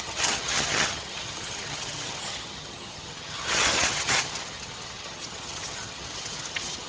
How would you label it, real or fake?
fake